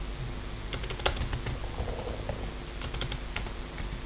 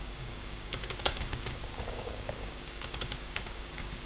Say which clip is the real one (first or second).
first